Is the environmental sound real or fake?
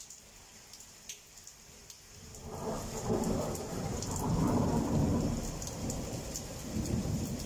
fake